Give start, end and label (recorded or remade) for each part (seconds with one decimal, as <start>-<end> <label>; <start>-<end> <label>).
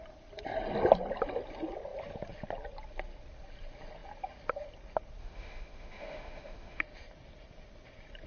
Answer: 0.0-5.2 recorded; 5.2-6.8 remade; 6.8-8.3 recorded